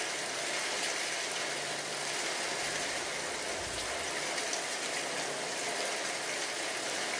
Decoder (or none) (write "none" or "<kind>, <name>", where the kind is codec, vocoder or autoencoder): none